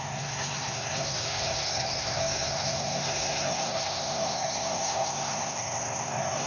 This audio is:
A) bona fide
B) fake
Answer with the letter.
B